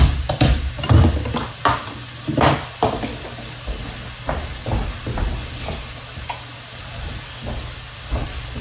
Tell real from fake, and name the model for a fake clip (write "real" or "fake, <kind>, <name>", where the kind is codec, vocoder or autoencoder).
real